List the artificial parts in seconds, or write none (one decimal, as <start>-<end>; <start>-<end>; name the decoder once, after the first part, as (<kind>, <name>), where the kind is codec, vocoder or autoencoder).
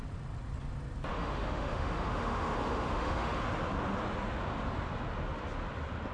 1.1-3.4 (autoencoder, DAC-VAE)